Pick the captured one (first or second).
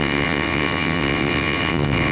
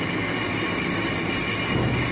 second